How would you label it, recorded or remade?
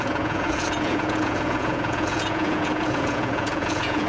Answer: remade